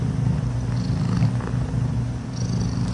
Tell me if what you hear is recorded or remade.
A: recorded